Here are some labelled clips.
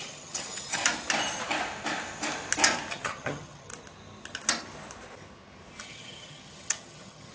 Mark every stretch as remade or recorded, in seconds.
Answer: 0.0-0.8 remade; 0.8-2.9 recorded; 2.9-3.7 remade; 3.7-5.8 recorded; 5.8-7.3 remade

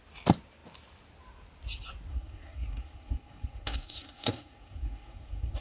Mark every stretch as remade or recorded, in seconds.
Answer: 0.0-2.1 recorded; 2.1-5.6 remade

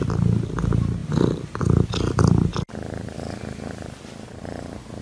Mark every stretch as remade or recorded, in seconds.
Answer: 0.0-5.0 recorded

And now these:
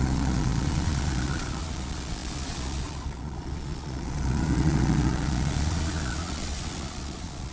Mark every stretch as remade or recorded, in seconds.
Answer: 0.0-7.5 remade

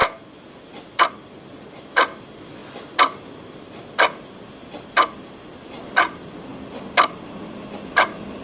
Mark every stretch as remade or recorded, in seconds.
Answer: 0.0-8.4 recorded